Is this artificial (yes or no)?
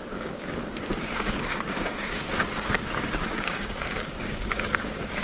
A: yes